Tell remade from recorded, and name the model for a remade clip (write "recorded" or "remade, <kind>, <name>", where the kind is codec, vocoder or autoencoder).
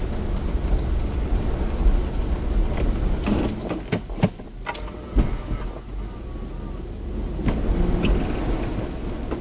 recorded